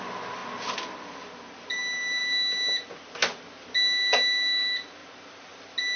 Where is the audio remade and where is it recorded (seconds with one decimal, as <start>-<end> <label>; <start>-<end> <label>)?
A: 0.0-5.0 recorded; 5.0-5.5 remade; 5.5-6.0 recorded